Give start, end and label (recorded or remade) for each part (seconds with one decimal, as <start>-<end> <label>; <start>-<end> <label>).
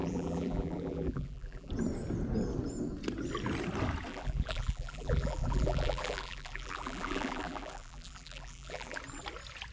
0.0-1.7 remade; 1.7-4.1 recorded; 4.1-9.0 remade; 9.0-9.7 recorded